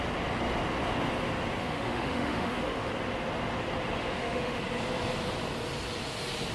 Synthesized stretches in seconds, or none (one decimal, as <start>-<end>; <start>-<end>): 1.6-2.9; 4.0-4.6